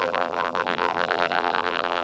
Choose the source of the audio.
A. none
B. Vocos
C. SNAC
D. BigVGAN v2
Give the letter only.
D